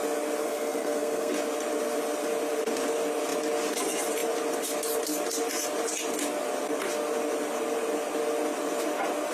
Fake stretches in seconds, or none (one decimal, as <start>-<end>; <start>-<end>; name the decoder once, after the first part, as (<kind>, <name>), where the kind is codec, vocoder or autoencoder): 0.4-1.3 (codec, SNAC)